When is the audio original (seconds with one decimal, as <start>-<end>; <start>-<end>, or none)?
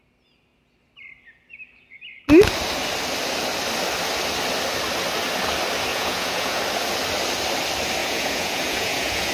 0.0-5.9; 6.6-8.0